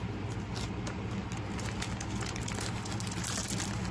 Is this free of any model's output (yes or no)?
yes